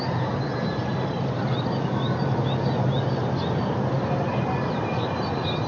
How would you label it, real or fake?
real